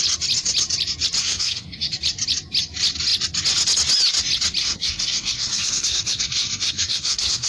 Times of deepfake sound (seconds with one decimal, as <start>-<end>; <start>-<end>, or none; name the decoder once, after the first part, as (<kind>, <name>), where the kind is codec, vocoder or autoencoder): 1.2-1.9 (codec, SNAC); 4.6-7.5